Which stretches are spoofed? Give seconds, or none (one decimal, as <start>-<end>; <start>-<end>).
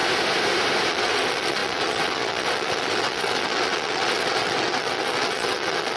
0.9-6.0